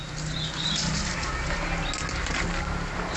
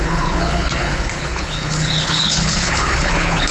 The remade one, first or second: second